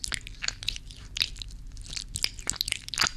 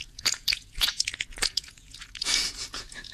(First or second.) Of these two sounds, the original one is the first